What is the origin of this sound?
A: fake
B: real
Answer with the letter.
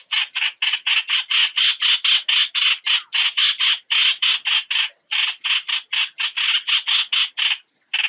B